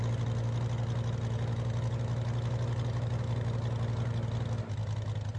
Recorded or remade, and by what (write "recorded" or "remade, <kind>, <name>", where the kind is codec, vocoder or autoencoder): recorded